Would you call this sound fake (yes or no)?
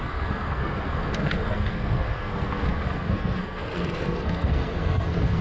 yes